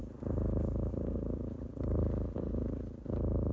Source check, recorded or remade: recorded